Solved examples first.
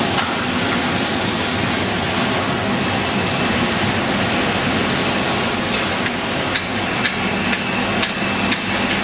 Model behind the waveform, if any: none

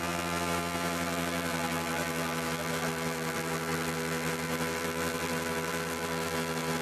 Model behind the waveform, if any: vocoder, BigVGAN v2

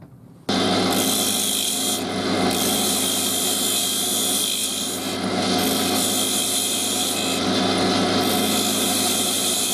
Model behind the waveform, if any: none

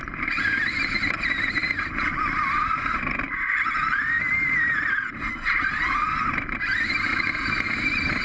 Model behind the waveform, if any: vocoder, BigVGAN v2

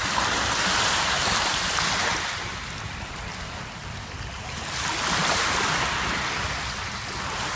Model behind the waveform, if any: none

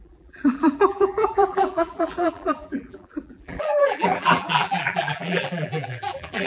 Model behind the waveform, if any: vocoder, BigVGAN v2